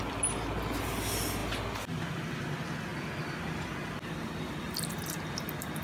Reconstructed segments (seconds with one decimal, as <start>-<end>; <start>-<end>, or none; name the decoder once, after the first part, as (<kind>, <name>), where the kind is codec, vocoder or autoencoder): none